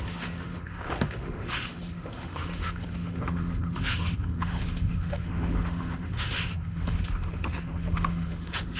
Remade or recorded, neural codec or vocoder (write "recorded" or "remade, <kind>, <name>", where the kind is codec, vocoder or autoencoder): remade, autoencoder, DAC-VAE